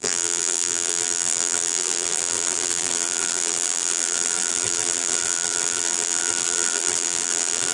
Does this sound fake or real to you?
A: fake